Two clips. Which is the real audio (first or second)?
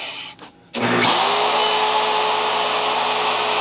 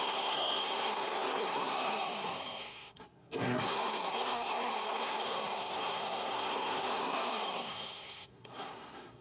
first